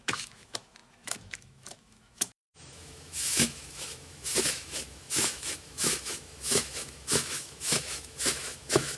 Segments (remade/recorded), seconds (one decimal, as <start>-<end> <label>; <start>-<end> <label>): 0.0-9.0 remade